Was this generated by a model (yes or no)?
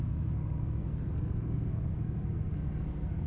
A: yes